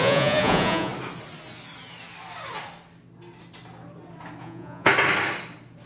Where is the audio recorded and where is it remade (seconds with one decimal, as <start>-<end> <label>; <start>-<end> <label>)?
0.0-0.9 remade; 0.9-4.4 recorded; 4.4-4.9 remade; 4.9-5.9 recorded